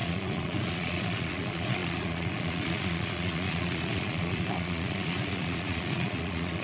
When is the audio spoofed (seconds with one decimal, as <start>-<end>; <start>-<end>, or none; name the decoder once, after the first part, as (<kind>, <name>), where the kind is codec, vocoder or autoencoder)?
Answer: 0.0-6.6 (vocoder, Vocos)